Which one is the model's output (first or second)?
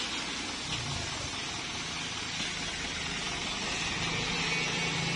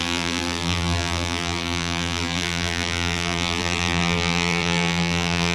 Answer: second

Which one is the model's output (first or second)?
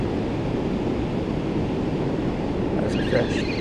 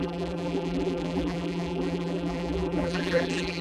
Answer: second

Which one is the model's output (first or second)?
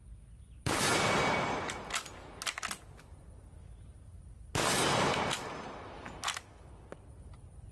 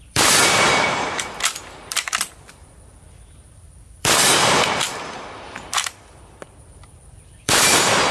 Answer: second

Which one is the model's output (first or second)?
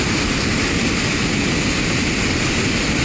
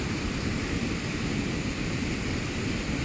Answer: second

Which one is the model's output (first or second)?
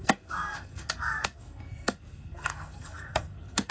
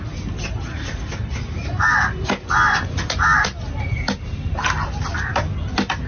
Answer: first